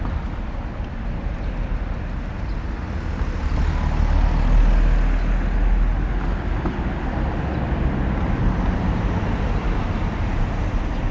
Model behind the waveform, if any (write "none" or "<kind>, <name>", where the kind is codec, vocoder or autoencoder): none